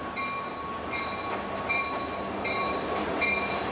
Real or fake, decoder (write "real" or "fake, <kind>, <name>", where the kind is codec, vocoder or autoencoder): real